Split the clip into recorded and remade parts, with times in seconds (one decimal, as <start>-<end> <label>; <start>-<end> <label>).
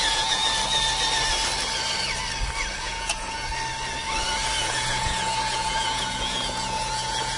0.0-0.4 remade; 0.4-2.8 recorded; 2.8-3.5 remade; 3.5-4.6 recorded; 4.6-7.4 remade